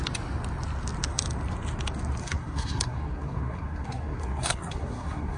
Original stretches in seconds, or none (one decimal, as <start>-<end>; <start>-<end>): 0.0-2.2

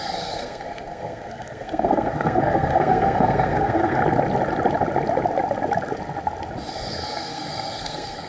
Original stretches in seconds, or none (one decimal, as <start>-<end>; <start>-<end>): 4.0-6.7